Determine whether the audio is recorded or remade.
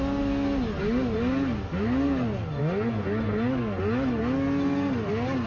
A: recorded